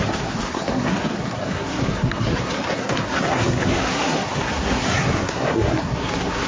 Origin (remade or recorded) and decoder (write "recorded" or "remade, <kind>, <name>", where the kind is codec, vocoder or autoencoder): remade, codec, SNAC